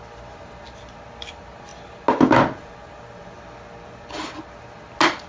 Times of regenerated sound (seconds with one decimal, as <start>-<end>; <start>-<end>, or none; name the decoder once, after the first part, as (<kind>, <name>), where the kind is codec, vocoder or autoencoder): none